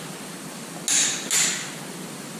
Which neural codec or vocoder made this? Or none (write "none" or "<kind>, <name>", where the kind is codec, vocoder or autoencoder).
none